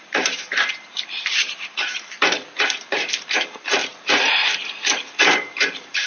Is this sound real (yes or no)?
no